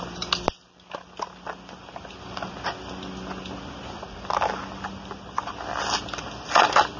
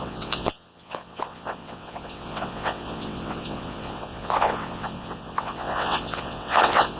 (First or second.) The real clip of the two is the first